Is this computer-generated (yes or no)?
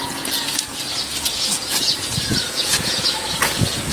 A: yes